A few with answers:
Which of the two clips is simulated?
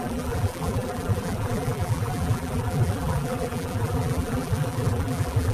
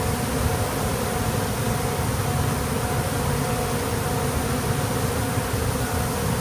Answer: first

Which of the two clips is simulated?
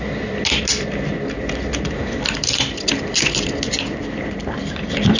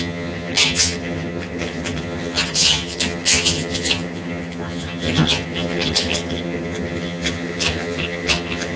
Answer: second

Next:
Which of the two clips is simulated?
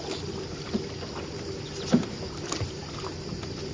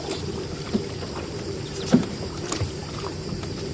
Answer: second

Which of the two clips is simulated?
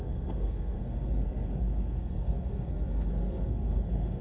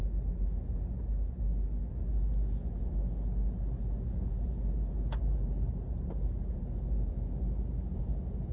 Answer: first